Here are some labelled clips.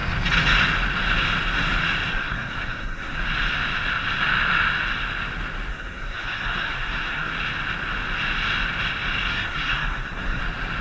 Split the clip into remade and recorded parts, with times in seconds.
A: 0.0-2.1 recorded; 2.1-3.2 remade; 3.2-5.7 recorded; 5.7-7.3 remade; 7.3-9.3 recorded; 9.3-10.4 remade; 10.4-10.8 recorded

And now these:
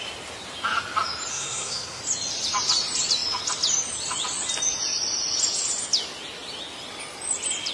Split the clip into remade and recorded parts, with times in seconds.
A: 0.0-1.3 recorded; 1.3-2.0 remade; 2.0-7.7 recorded